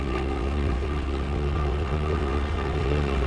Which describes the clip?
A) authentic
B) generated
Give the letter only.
B